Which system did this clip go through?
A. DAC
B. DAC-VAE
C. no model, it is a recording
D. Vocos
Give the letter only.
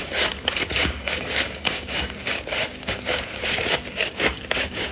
A